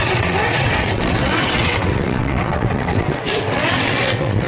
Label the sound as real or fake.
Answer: fake